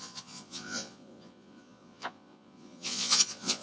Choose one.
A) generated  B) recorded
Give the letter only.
A